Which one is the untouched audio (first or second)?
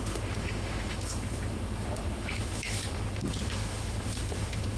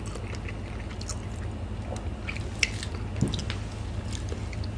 second